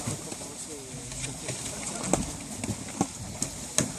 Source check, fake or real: real